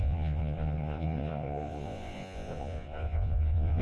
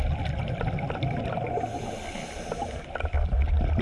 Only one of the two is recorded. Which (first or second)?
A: second